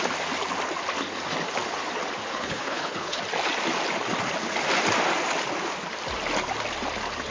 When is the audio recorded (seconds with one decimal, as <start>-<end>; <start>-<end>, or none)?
0.0-2.3; 3.2-7.3